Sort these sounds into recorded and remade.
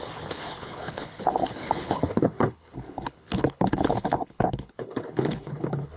remade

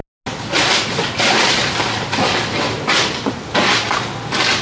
recorded